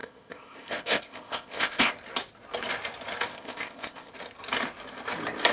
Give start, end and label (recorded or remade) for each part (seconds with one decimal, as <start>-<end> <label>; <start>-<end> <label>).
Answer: 0.0-1.9 remade; 1.9-3.3 recorded; 3.3-4.1 remade; 4.1-5.5 recorded